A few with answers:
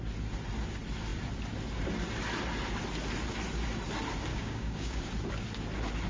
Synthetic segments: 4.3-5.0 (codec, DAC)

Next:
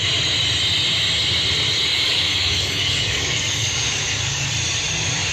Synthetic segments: 1.9-4.5 (codec, DAC)

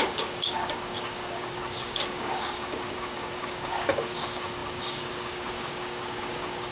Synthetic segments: 0.0-6.7 (codec, DAC)

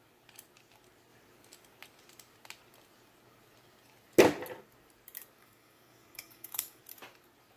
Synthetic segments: 5.4-6.8 (codec, DAC)

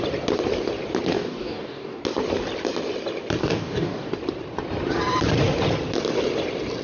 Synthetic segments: 1.1-2.0 (codec, DAC); 3.4-4.1

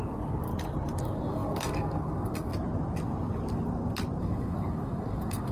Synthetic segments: 0.0-0.5 (codec, DAC); 1.0-2.5; 4.2-5.5